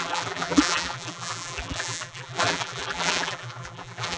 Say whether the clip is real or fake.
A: fake